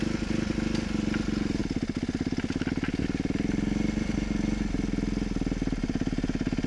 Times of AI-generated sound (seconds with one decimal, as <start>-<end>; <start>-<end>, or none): none